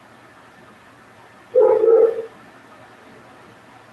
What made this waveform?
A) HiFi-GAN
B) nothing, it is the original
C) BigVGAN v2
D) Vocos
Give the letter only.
B